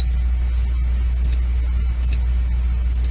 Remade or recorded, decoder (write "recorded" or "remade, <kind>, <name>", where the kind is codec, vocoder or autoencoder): recorded